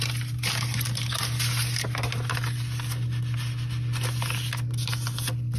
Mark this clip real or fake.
real